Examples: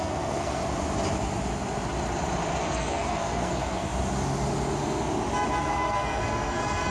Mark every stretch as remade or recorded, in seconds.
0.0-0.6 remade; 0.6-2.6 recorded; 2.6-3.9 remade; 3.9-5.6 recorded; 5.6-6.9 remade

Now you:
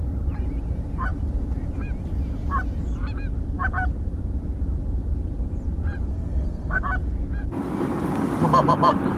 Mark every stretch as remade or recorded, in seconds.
0.0-6.1 recorded; 6.1-6.8 remade; 6.8-9.2 recorded

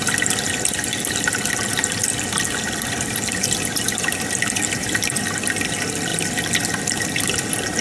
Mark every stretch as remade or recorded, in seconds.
0.0-7.8 recorded

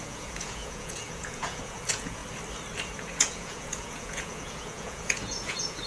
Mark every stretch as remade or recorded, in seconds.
0.0-2.2 remade; 2.2-2.9 recorded; 2.9-5.9 remade

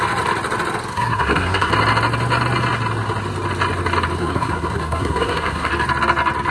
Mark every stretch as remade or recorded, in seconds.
0.0-0.9 recorded; 0.9-1.7 remade; 1.7-4.2 recorded; 4.2-5.7 remade; 5.7-6.5 recorded